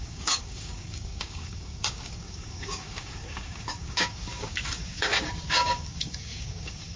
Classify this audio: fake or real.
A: fake